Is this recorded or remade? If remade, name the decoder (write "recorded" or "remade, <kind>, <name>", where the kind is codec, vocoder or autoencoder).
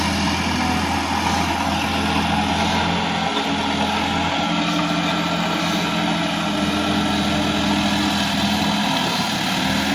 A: recorded